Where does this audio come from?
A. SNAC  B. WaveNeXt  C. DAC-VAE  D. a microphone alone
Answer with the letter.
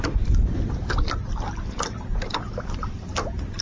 D